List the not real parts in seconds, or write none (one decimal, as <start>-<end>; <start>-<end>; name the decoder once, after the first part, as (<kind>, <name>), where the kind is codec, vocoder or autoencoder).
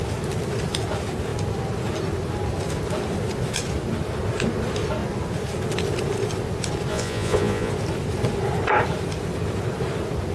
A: 6.9-7.7 (vocoder, Vocos)